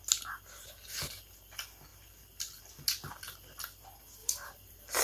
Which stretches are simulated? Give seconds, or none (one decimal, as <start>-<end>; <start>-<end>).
4.2-5.0